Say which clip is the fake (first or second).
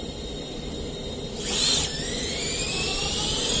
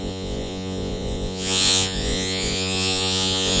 second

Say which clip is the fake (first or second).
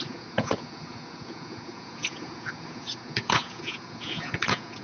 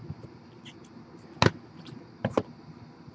first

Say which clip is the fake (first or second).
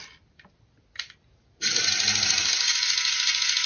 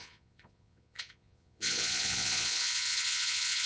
second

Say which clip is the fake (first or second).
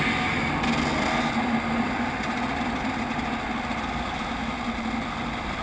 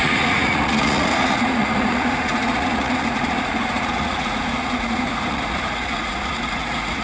second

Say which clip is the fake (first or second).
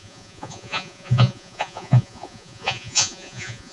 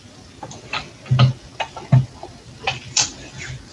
first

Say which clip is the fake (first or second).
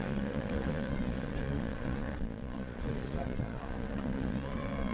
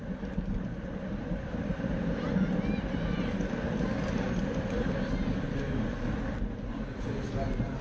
first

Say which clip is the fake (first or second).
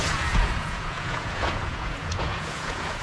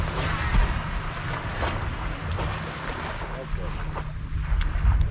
first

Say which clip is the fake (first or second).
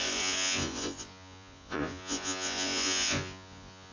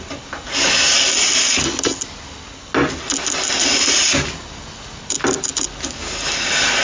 first